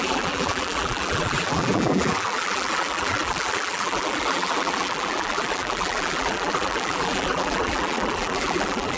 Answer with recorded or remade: remade